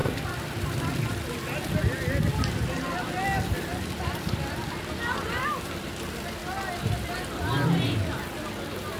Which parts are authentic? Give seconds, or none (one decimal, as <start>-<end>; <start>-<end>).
0.9-3.7; 5.9-6.4; 8.4-9.0